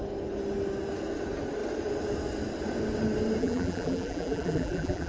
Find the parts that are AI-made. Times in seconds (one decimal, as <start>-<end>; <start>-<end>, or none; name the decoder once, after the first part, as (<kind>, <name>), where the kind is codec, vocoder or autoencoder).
3.4-5.1 (vocoder, BigVGAN v2)